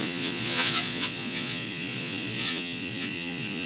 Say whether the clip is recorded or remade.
remade